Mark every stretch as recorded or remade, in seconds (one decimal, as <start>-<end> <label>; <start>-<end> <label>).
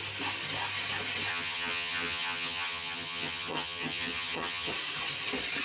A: 0.0-1.3 recorded; 1.3-4.7 remade; 4.7-5.6 recorded